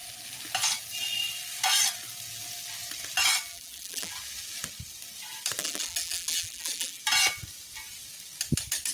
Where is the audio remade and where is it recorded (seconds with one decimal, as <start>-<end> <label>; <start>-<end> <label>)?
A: 0.0-3.5 recorded; 3.5-4.1 remade; 4.1-5.6 recorded; 5.6-7.0 remade; 7.0-8.9 recorded